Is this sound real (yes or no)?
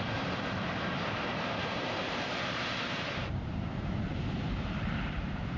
no